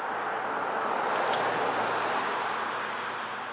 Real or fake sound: real